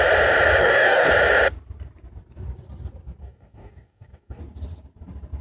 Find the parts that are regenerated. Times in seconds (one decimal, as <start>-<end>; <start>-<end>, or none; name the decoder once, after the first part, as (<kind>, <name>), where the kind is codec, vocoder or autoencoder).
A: 0.6-1.1 (codec, DAC); 3.2-4.4